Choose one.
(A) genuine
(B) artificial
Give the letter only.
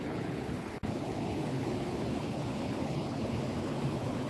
B